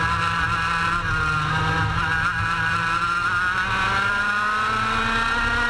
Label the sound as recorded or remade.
recorded